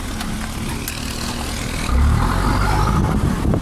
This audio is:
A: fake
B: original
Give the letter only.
B